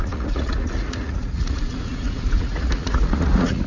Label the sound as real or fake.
fake